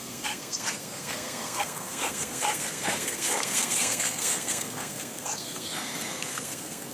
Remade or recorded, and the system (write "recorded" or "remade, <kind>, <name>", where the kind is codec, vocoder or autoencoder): remade, codec, SNAC